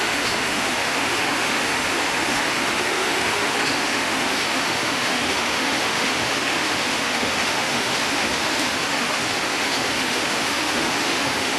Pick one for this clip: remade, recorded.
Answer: remade